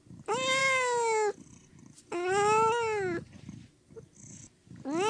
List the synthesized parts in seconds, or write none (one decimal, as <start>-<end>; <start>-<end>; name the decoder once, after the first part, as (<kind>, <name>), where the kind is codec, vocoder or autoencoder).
none